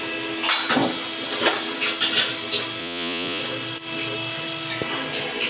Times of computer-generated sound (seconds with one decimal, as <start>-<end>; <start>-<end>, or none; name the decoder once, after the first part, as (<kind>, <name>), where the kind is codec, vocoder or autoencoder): 2.8-3.4 (vocoder, Vocos)

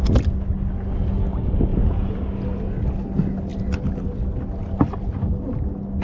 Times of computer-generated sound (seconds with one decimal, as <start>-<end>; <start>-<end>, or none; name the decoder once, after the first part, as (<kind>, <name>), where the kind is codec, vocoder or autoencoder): 1.7-2.2 (vocoder, Vocos)

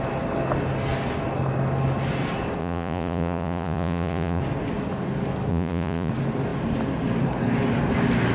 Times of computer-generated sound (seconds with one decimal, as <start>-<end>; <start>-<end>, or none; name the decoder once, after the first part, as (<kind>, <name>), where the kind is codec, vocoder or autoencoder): 2.6-4.4 (vocoder, Vocos); 5.5-6.1

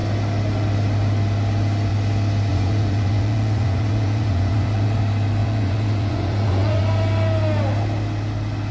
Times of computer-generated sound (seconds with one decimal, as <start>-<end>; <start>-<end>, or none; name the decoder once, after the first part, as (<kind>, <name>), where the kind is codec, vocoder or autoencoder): 2.5-5.0 (vocoder, Vocos); 5.4-6.8

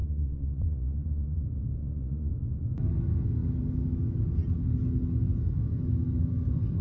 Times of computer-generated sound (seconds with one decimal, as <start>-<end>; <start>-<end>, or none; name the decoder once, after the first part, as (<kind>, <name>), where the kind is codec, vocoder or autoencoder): 0.0-1.4 (vocoder, Vocos); 1.8-2.3

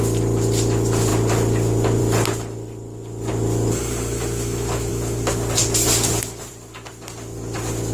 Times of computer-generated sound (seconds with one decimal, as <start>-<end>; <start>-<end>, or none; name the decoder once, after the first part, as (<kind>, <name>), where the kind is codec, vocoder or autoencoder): none